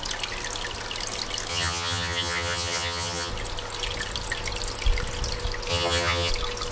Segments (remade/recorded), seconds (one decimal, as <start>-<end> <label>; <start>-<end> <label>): 0.0-1.5 recorded; 1.5-3.3 remade; 3.3-5.7 recorded; 5.7-6.3 remade; 6.3-6.7 recorded